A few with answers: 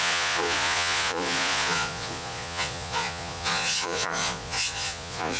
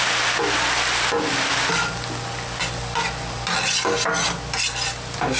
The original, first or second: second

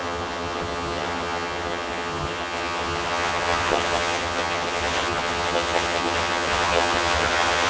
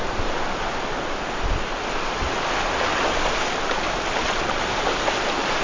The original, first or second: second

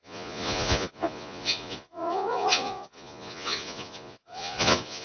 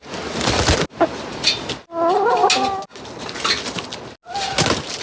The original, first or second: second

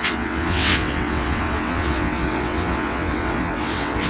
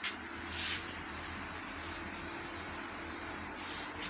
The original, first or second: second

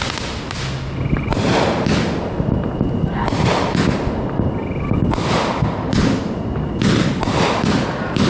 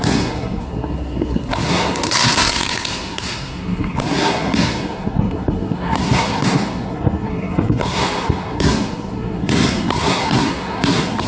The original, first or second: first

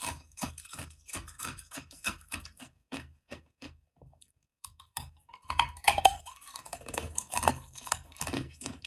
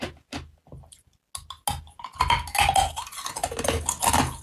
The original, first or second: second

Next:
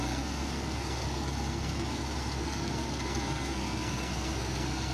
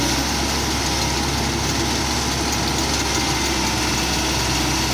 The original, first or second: second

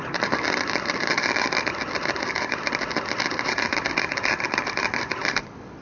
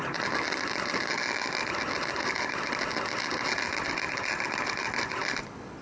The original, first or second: second